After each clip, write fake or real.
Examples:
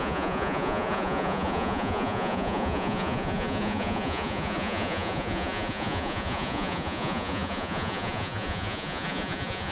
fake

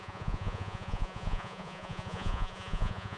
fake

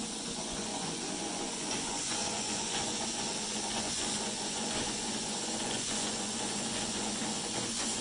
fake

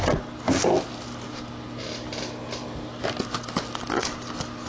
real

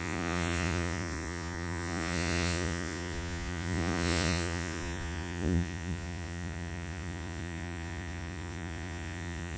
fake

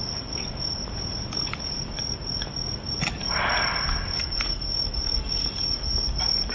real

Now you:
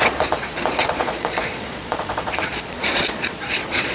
fake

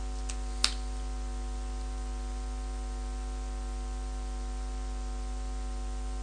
real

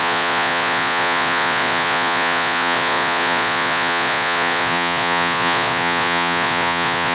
fake